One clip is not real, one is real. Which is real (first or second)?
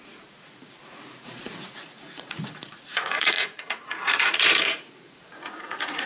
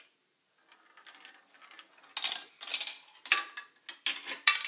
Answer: second